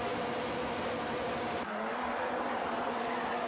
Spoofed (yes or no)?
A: no